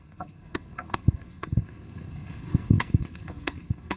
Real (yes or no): no